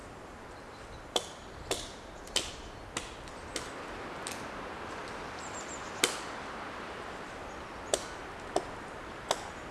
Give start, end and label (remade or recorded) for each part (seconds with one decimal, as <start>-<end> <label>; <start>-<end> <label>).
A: 0.0-9.7 recorded